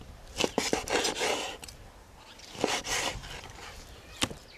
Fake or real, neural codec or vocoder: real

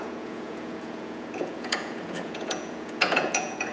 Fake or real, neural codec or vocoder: fake, vocoder, Vocos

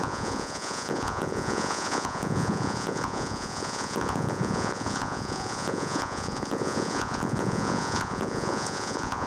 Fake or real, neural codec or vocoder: fake, vocoder, Vocos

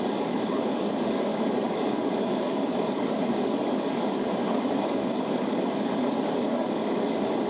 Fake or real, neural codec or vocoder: fake, codec, DAC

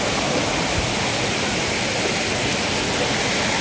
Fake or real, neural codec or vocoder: real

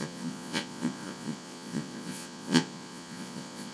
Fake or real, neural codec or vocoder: fake, vocoder, Vocos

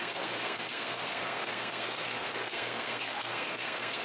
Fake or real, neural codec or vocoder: fake, codec, SNAC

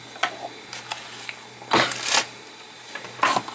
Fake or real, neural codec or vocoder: real